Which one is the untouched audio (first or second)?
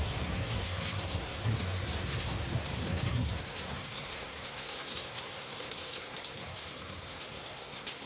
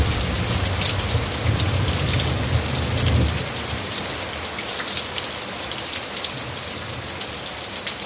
second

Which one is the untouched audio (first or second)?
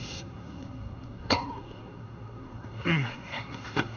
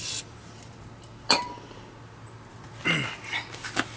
second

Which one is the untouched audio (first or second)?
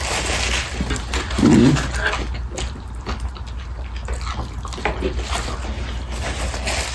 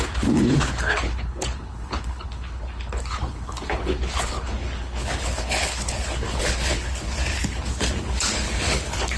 first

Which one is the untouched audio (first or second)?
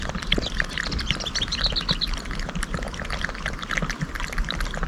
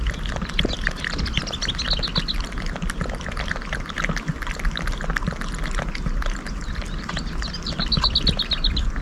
second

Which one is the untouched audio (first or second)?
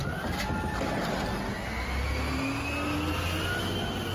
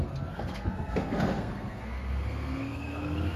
first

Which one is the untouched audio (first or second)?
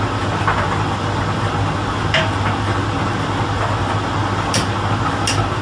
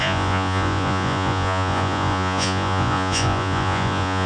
first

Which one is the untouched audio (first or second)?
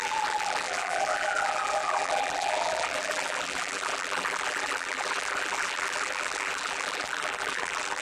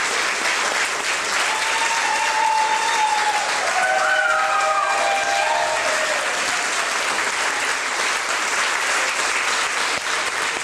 second